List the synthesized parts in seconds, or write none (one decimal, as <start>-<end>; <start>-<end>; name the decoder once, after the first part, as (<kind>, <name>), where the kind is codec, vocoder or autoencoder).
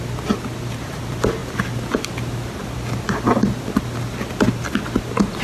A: none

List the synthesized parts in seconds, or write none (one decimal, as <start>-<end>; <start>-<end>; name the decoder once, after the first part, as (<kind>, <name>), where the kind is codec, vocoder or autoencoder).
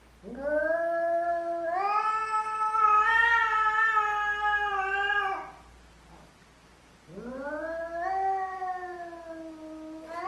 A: 6.7-7.8 (vocoder, BigVGAN v2)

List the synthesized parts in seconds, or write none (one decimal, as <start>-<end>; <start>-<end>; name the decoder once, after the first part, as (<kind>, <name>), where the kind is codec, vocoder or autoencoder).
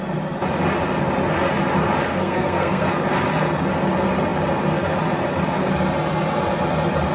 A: 2.1-2.9 (codec, SNAC)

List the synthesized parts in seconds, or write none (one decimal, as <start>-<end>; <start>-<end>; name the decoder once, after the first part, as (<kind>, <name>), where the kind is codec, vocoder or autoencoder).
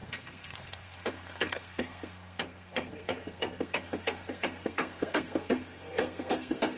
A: 0.0-6.8 (codec, SNAC)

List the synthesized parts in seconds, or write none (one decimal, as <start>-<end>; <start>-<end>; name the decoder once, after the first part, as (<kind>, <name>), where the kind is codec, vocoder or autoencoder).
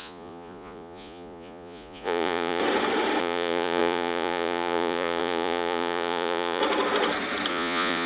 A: 0.0-2.6 (vocoder, Vocos); 3.2-6.6; 7.5-8.1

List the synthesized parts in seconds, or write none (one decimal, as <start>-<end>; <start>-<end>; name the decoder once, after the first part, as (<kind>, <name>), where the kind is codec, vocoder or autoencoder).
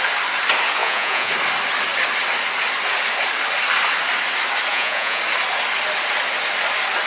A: 0.8-1.3 (vocoder, Vocos); 4.7-5.2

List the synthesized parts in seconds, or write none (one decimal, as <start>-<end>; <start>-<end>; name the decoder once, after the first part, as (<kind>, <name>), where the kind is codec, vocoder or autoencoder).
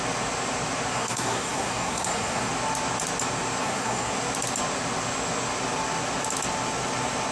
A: 0.9-2.5 (codec, SNAC); 3.6-4.1